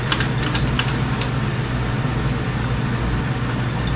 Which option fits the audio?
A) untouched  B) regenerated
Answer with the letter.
A